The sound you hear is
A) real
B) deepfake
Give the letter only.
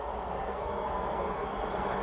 B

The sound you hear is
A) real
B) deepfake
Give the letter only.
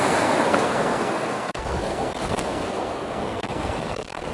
B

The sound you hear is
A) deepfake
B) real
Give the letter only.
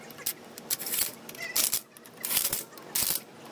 B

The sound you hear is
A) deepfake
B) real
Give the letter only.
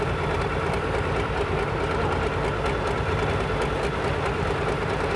B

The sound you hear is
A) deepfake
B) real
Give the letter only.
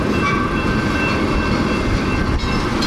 B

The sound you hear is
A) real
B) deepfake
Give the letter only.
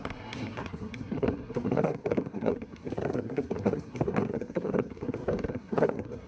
B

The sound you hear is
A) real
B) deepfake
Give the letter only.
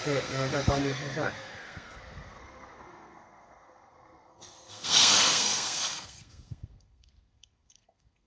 B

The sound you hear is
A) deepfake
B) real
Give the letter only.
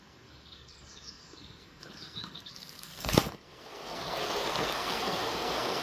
A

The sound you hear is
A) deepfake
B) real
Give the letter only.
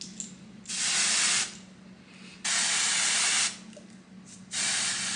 B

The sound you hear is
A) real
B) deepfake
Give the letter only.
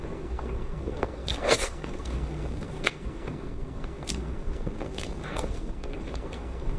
B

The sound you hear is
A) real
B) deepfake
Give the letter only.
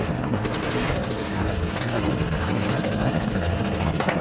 B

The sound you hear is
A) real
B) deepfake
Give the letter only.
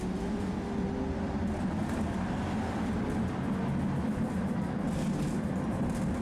A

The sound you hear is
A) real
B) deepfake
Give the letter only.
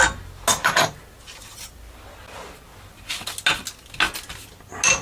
A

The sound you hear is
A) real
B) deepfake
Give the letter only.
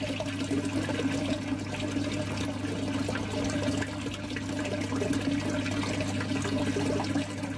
A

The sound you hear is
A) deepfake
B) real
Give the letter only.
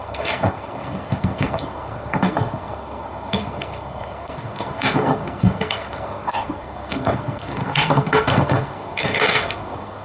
A